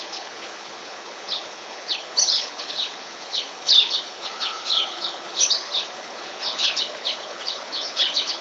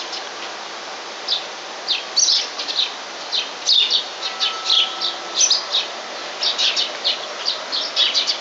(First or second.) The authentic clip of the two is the second